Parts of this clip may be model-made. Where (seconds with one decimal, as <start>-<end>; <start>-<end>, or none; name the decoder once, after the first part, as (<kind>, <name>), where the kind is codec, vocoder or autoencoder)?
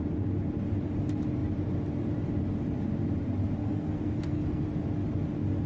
3.6-4.6 (codec, SNAC)